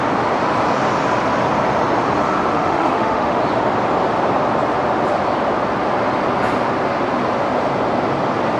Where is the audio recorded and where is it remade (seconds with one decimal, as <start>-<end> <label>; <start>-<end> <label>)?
0.0-2.5 recorded; 2.5-3.4 remade; 3.4-8.6 recorded